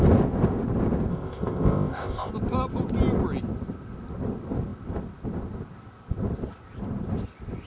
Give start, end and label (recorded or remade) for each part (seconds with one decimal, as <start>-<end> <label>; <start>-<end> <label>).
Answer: 0.0-1.1 recorded; 1.1-2.3 remade; 2.3-7.7 recorded